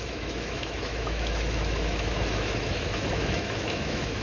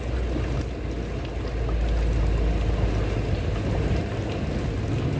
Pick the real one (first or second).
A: second